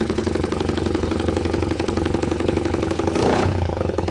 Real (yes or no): no